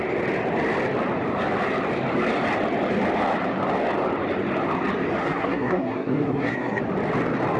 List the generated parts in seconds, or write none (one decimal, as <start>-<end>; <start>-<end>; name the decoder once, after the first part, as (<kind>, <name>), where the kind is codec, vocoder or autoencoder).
5.2-6.8 (codec, SNAC)